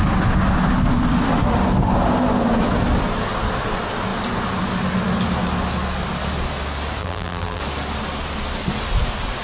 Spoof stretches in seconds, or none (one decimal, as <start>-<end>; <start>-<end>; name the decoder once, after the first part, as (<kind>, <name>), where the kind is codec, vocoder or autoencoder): 7.0-7.6 (vocoder, BigVGAN v2)